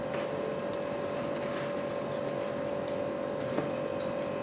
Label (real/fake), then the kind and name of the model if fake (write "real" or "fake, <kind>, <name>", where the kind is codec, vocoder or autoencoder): real